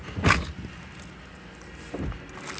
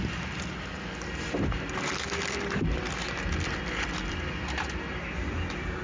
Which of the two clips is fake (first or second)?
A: second